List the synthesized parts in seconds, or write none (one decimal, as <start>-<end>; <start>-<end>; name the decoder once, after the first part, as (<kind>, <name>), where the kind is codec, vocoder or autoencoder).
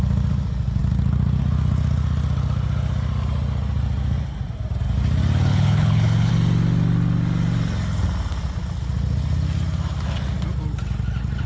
5.5-6.3 (codec, HILCodec)